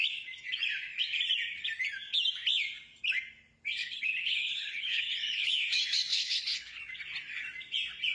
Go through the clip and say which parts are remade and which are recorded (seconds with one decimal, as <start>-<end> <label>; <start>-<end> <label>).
0.0-3.8 recorded; 3.8-5.5 remade; 5.5-6.1 recorded; 6.1-6.8 remade; 6.8-8.1 recorded

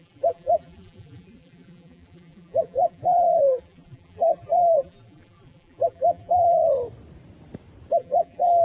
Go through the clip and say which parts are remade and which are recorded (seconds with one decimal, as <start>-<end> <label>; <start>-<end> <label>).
0.0-6.6 remade; 6.6-7.9 recorded; 7.9-8.6 remade